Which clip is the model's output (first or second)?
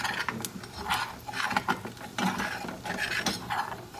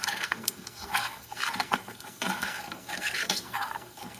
second